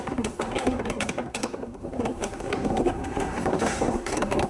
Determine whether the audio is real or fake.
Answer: fake